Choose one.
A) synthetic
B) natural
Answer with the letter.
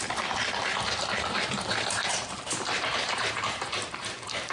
A